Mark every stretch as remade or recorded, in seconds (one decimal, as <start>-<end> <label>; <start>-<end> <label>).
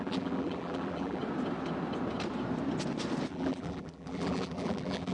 0.0-1.2 remade; 1.2-3.3 recorded; 3.3-5.1 remade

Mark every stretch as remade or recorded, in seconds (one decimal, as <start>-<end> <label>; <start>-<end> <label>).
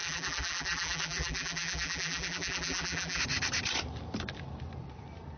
0.0-3.2 remade; 3.2-5.4 recorded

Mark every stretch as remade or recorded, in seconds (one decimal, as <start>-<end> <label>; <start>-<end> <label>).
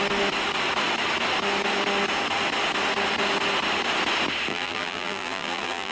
0.0-4.5 recorded; 4.5-5.9 remade